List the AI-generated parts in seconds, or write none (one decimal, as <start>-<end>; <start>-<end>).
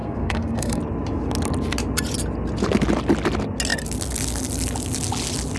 0.0-0.8